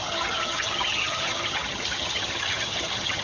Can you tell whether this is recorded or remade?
remade